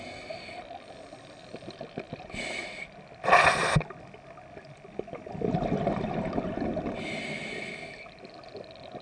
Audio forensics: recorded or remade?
recorded